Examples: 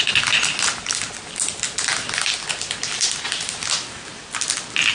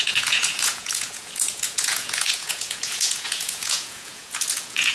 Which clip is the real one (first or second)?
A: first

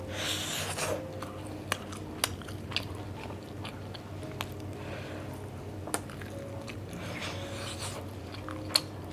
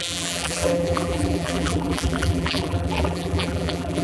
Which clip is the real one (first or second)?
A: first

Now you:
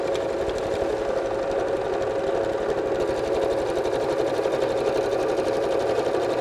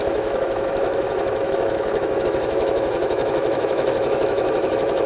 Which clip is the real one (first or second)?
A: first